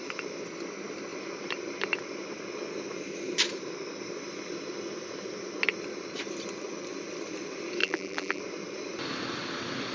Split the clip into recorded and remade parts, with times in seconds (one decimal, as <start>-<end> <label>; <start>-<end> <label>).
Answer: 0.0-7.8 recorded; 7.8-8.4 remade; 8.4-9.9 recorded